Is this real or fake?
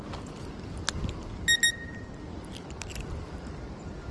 real